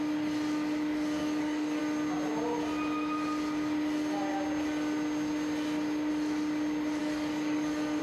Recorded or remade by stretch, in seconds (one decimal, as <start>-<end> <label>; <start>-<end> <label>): 0.0-1.2 recorded; 1.2-1.8 remade; 1.8-7.0 recorded; 7.0-8.0 remade